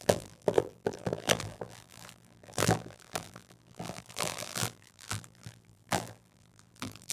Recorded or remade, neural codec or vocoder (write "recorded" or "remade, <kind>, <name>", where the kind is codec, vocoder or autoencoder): remade, vocoder, BigVGAN v2